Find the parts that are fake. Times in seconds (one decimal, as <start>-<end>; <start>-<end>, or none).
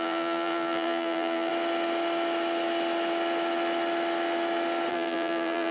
0.0-1.5; 4.9-5.7